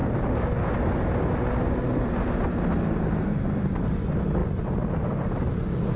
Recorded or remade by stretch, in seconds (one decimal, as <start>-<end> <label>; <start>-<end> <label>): 0.0-6.0 recorded